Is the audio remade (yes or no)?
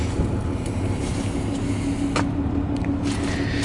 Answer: no